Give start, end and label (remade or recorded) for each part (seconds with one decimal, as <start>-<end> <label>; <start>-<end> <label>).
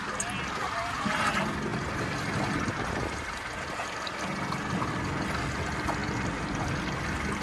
0.0-7.4 recorded